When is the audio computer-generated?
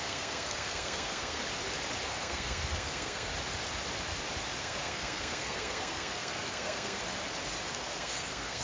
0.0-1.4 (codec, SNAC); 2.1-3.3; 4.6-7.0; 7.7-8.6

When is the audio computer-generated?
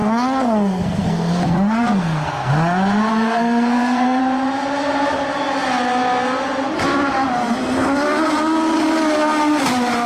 0.0-2.5 (codec, SNAC); 3.1-4.2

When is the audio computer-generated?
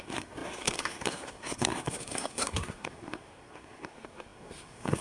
0.0-5.0 (codec, SNAC)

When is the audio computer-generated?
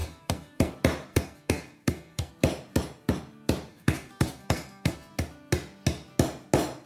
0.0-0.7 (codec, SNAC); 1.1-2.3; 3.7-5.1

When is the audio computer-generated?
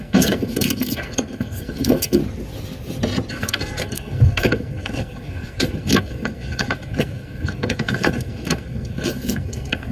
0.0-2.2 (codec, SNAC); 3.3-9.9